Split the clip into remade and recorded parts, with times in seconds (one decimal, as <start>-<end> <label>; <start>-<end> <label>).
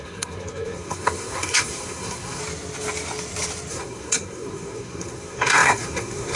0.0-2.4 remade; 2.4-3.7 recorded; 3.7-6.4 remade